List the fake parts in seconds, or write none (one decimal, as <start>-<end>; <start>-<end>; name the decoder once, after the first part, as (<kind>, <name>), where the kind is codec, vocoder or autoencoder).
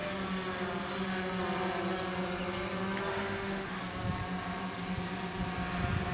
3.1-3.8 (autoencoder, DAC-VAE)